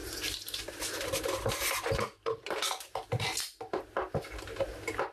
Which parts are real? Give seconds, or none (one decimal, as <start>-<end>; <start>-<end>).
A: 0.0-5.1

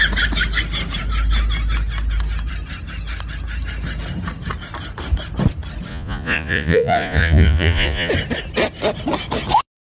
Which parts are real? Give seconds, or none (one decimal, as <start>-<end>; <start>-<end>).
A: 0.0-5.9; 8.1-10.0

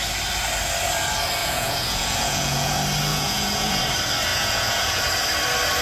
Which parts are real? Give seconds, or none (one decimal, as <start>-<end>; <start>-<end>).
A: 0.0-1.4; 2.7-3.1; 3.8-4.3; 5.0-5.8

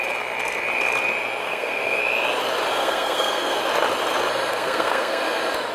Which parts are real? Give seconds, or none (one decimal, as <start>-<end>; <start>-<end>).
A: 0.0-1.4; 2.0-2.8; 3.6-4.5; 5.2-5.7

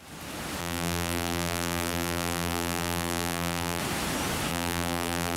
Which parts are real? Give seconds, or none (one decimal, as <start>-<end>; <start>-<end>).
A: 0.0-0.6; 3.8-4.5

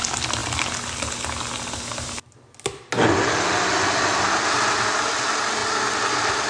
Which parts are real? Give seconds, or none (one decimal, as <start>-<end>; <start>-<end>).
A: 0.0-6.5

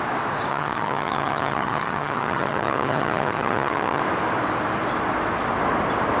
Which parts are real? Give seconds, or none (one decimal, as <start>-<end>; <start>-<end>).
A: 0.0-0.5; 4.0-6.2

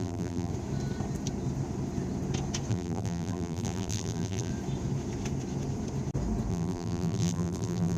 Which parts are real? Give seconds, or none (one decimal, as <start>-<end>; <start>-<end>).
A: 0.5-2.7; 4.5-6.5